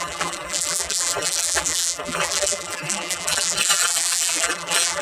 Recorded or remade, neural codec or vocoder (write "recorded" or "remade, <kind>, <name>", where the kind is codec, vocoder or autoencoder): remade, vocoder, BigVGAN v2